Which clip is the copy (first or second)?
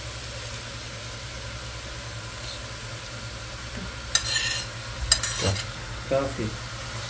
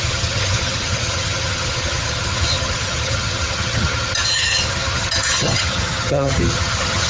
second